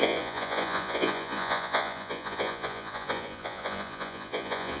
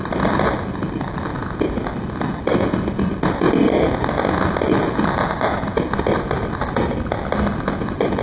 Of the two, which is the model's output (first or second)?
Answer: first